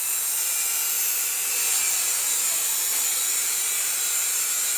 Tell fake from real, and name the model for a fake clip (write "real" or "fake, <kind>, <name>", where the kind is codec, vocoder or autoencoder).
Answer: fake, vocoder, BigVGAN v2